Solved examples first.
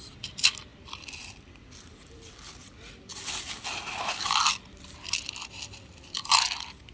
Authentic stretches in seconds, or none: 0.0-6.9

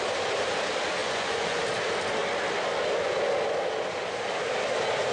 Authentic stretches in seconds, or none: 0.0-1.0; 1.6-5.1

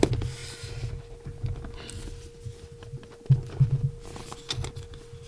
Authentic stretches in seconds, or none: 0.0-5.3

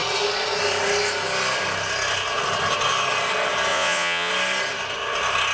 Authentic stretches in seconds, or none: 0.0-3.7; 4.3-5.5

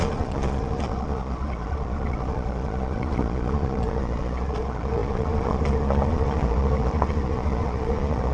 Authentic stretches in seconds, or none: none

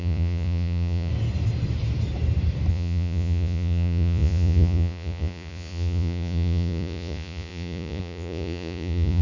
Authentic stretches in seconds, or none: 1.1-2.7

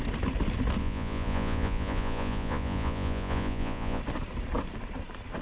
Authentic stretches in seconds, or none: 0.0-0.8; 4.0-5.4